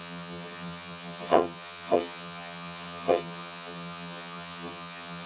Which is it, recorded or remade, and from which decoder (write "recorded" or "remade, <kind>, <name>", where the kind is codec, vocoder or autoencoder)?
remade, vocoder, HiFi-GAN